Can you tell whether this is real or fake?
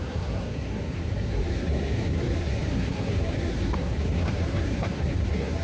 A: fake